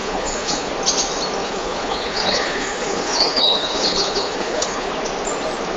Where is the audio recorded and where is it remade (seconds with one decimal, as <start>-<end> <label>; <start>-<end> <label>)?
0.0-0.7 remade; 0.7-1.4 recorded; 1.4-4.9 remade; 4.9-5.8 recorded